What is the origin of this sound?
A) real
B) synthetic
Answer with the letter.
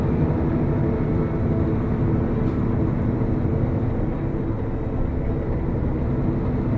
A